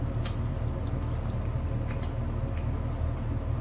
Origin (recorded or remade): recorded